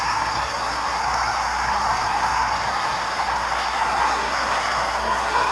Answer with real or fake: fake